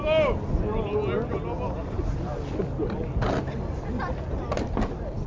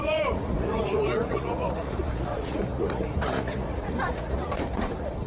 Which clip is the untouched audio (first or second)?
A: first